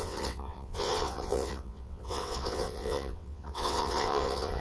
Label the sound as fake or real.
fake